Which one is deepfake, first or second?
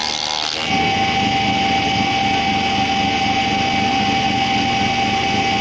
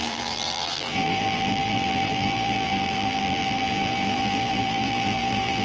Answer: second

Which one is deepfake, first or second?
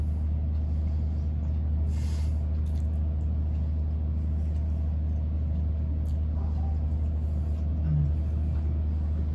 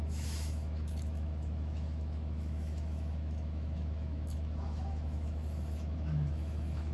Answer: second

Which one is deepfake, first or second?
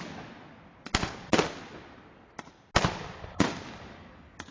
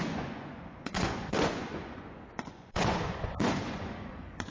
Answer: second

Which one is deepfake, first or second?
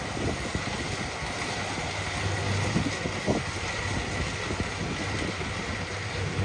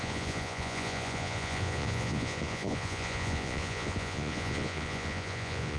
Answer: second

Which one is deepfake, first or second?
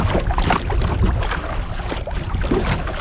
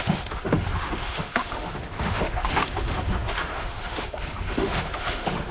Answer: second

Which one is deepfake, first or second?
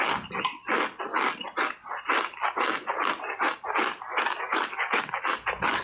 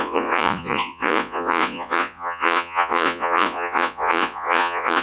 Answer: second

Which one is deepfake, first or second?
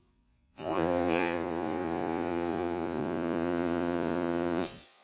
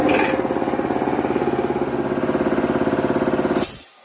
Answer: first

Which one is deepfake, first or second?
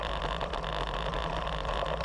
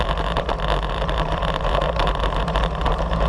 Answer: second